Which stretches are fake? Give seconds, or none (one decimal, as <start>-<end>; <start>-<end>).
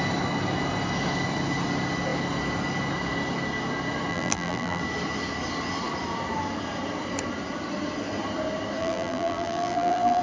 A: 4.1-4.8; 8.8-10.2